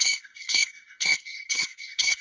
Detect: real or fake fake